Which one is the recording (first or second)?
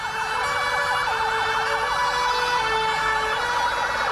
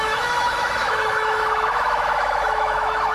first